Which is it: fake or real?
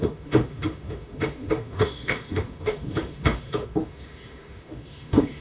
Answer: fake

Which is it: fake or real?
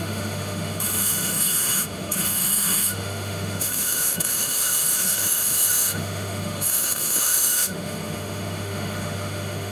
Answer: fake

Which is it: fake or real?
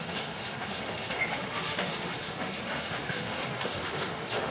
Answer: fake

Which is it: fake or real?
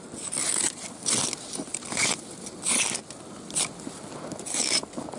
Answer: real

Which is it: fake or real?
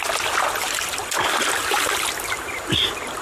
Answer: real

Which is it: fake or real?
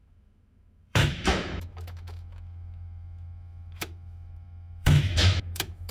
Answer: fake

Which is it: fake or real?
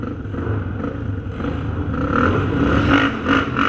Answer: real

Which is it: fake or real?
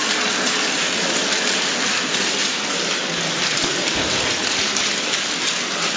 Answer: real